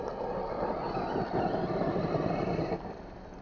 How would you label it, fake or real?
real